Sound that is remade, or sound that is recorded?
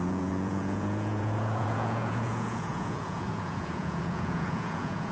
remade